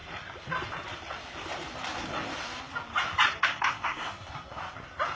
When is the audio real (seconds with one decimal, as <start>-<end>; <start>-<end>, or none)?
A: 0.0-3.4; 4.6-5.2